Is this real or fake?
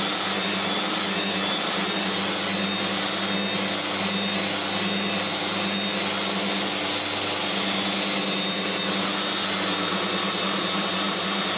real